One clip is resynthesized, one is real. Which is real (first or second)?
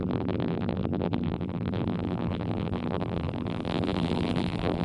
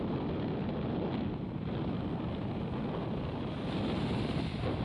second